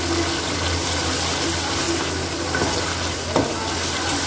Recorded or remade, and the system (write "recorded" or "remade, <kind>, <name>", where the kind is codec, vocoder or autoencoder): recorded